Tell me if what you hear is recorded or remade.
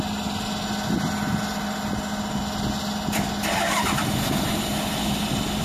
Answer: recorded